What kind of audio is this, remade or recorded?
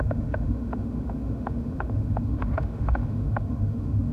remade